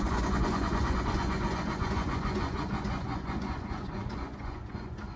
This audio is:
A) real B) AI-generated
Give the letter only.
B